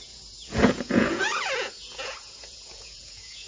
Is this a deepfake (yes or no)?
yes